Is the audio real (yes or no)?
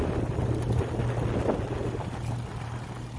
yes